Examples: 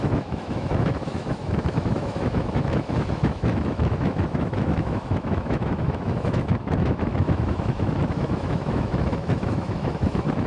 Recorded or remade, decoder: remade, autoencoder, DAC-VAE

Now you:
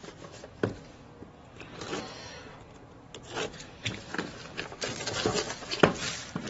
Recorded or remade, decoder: recorded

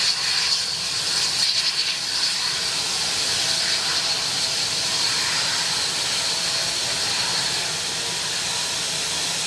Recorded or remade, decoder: recorded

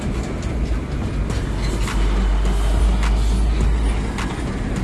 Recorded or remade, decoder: recorded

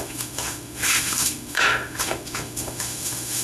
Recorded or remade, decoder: remade, autoencoder, DAC-VAE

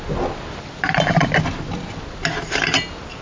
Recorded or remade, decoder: recorded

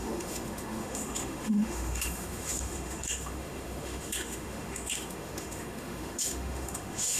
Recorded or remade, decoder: remade, autoencoder, DAC-VAE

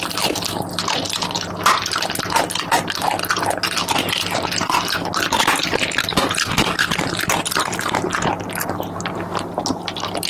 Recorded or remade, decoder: recorded